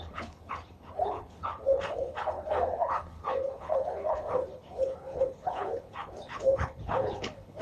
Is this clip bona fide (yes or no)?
no